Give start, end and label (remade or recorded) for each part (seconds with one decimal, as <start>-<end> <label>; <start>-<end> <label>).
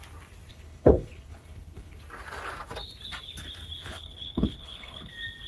0.0-0.5 recorded; 0.5-2.0 remade; 2.0-3.8 recorded; 3.8-5.1 remade; 5.1-5.5 recorded